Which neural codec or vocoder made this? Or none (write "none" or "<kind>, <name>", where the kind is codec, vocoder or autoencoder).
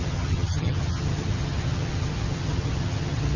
vocoder, HiFi-GAN